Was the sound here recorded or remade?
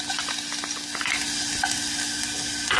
recorded